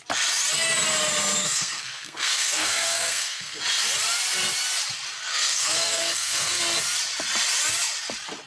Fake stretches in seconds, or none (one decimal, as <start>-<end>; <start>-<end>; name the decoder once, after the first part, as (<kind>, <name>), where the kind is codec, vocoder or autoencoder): 1.4-3.6 (codec, SNAC); 5.3-6.6